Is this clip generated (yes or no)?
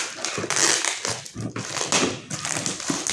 no